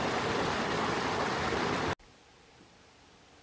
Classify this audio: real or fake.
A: real